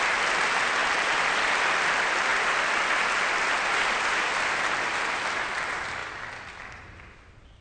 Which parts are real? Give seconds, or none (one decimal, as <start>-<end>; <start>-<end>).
0.0-7.6